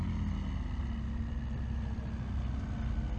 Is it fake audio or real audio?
real